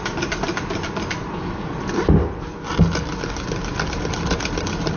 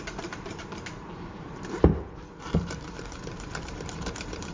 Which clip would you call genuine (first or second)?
first